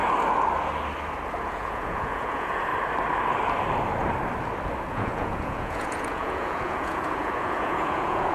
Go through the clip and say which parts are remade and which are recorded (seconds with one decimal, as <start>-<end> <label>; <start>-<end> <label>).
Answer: 0.0-1.3 recorded; 1.3-2.7 remade; 2.7-4.9 recorded; 4.9-8.3 remade

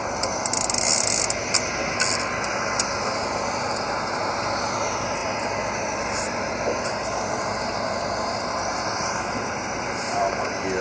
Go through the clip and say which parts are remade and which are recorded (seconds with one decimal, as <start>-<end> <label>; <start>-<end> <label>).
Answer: 0.0-10.8 recorded

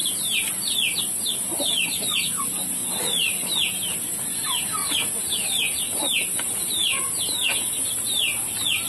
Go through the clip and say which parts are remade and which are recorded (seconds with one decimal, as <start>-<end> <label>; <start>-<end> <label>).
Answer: 0.0-4.8 recorded; 4.8-7.9 remade; 7.9-8.9 recorded

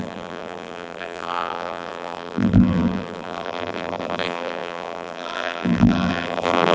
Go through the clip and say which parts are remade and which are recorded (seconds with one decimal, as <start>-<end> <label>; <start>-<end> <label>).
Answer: 0.0-6.7 remade

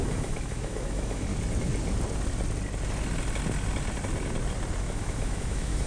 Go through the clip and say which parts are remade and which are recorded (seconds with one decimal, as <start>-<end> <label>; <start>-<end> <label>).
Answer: 0.0-1.3 remade; 1.3-4.8 recorded; 4.8-5.9 remade

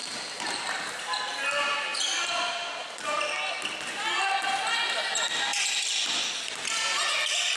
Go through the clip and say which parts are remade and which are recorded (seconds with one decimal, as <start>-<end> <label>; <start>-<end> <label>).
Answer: 0.0-0.8 remade; 0.8-5.5 recorded; 5.5-6.3 remade; 6.3-7.6 recorded

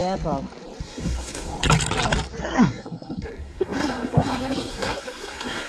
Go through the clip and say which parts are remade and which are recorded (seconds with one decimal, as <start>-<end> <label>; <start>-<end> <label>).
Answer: 0.0-0.8 recorded; 0.8-1.5 remade; 1.5-2.4 recorded; 2.4-5.7 remade

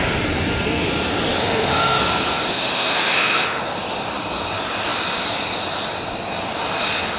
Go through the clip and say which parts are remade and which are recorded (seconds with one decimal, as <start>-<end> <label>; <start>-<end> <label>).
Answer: 0.0-1.4 recorded; 1.4-2.0 remade; 2.0-2.5 recorded; 2.5-3.6 remade; 3.6-7.2 recorded